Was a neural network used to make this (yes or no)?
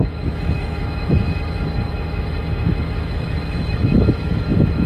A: yes